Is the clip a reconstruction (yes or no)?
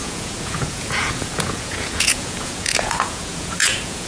yes